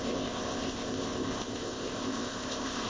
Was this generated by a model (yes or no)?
yes